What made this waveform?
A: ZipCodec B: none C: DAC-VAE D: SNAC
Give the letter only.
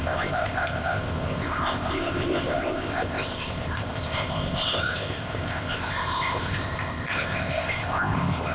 A